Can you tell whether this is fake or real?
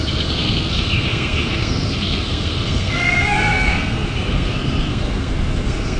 fake